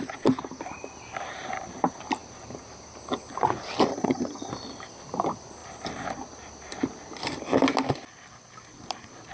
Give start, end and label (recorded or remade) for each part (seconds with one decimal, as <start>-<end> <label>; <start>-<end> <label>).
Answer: 0.0-3.9 recorded; 3.9-4.5 remade; 4.5-9.3 recorded